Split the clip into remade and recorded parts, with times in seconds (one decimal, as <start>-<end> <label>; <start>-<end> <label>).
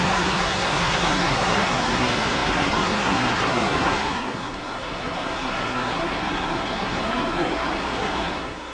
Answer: 0.0-8.7 remade